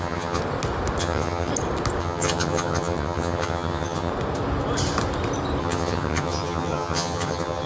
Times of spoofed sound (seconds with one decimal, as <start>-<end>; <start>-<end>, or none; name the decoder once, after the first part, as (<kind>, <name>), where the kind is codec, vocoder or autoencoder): 0.0-0.4 (vocoder, HiFi-GAN); 1.0-1.5; 2.0-4.1; 5.6-7.7